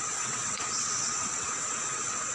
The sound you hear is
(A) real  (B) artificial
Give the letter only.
B